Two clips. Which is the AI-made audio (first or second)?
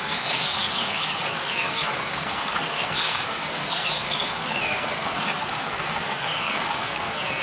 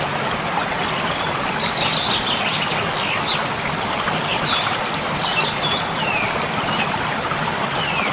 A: first